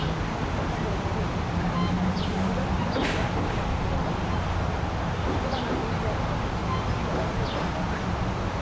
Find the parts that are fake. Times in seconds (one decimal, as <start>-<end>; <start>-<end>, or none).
none